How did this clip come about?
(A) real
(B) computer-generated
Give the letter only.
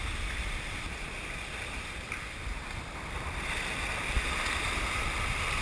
B